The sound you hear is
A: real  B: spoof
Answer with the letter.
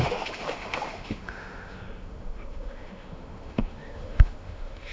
B